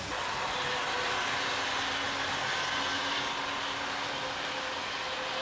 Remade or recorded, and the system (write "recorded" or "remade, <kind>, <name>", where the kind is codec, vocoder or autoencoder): recorded